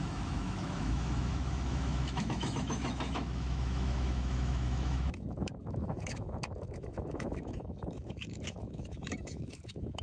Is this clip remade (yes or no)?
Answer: yes